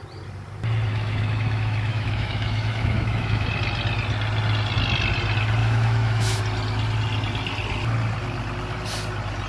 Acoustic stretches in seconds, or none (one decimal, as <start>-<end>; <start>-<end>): 0.0-0.9; 3.5-5.6; 6.4-9.5

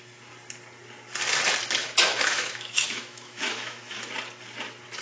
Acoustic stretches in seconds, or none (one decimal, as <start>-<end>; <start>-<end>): 0.0-1.8; 4.1-5.0

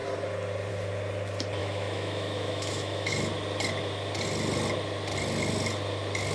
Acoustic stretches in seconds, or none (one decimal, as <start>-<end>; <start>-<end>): 0.0-1.6; 3.1-6.3

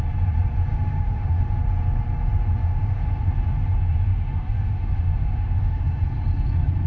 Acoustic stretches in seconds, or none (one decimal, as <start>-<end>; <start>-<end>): 0.0-0.7; 1.6-2.6; 3.3-4.1; 5.8-6.9

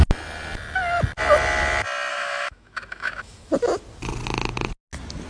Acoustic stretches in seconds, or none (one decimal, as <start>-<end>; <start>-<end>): 0.0-2.1; 3.5-5.3

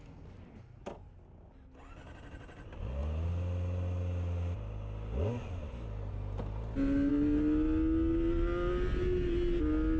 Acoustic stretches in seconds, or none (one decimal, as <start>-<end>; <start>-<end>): 0.0-10.0

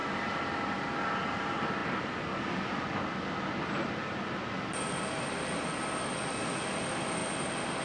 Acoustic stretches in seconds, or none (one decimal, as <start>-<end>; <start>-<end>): 0.0-7.8

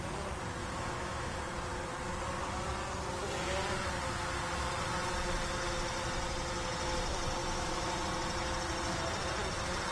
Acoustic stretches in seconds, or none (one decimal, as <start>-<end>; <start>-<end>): 0.0-0.6; 1.4-7.4; 7.9-9.9